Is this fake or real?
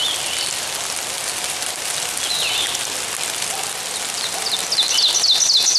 real